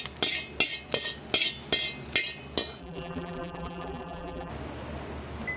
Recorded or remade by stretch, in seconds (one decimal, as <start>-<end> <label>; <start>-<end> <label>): 0.0-2.8 recorded; 2.8-4.5 remade; 4.5-5.6 recorded